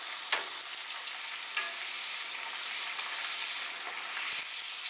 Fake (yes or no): yes